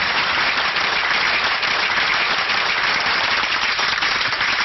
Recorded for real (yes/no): no